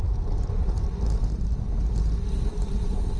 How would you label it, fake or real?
real